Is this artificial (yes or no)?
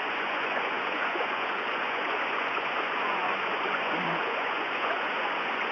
yes